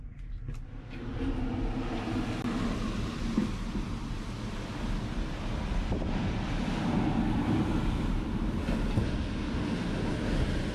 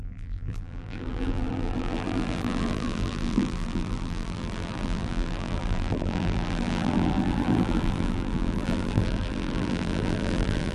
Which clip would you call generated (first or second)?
second